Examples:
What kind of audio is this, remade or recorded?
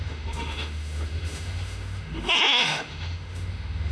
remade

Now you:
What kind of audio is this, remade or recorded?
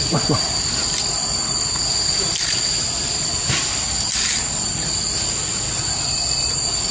recorded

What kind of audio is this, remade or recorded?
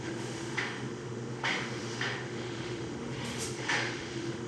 remade